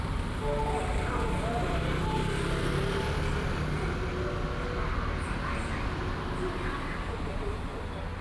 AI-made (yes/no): no